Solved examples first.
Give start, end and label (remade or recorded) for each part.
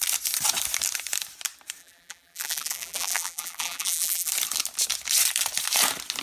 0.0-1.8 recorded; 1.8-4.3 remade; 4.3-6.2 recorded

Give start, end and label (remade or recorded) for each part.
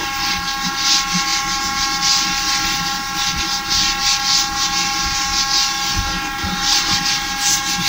0.0-7.9 recorded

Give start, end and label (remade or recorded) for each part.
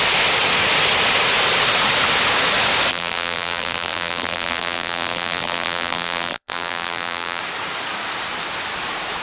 0.0-2.9 recorded; 2.9-7.4 remade; 7.4-9.2 recorded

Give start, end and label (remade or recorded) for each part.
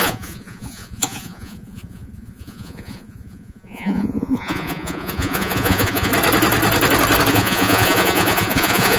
0.0-6.1 remade; 6.1-7.3 recorded; 7.3-9.0 remade